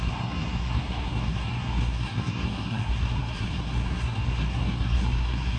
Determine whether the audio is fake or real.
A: fake